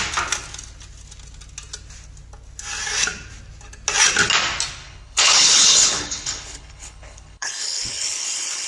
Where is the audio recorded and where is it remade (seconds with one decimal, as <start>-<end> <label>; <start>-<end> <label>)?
0.0-4.8 recorded; 4.8-8.7 remade